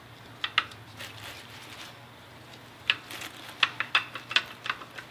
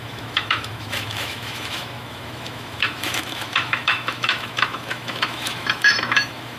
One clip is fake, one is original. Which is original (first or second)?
first